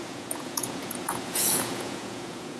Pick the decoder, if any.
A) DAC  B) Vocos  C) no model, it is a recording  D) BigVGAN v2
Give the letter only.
B